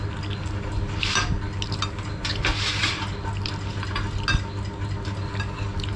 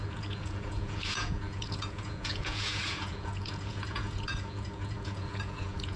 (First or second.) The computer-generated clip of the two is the second